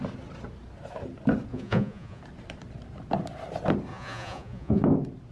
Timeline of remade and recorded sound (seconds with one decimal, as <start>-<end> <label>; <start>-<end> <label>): 0.0-1.5 recorded; 1.5-2.2 remade; 2.2-3.9 recorded; 3.9-4.8 remade; 4.8-5.3 recorded